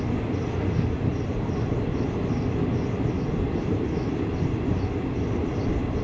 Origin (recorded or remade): recorded